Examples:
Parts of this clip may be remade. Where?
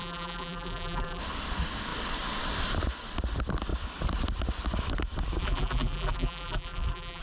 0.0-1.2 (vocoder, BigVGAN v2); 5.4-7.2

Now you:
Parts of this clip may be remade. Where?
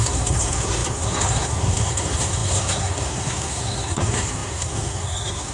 0.0-5.5 (codec, SNAC)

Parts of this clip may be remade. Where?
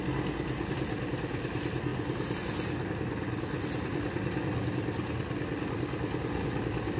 none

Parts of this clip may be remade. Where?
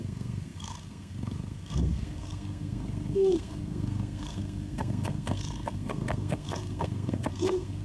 0.0-7.8 (codec, SNAC)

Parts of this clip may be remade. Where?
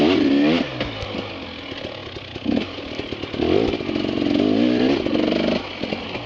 none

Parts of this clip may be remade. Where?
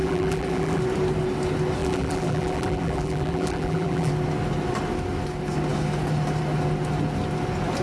0.0-0.8 (vocoder, BigVGAN v2); 1.8-4.1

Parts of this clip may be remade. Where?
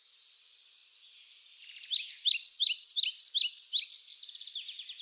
none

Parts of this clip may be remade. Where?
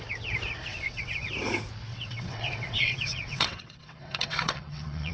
0.7-1.3 (vocoder, WaveNeXt); 1.9-5.1